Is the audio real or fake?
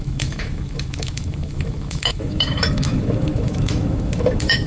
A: fake